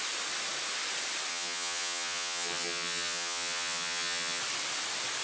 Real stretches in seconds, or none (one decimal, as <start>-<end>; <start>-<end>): 0.0-1.3; 4.4-5.2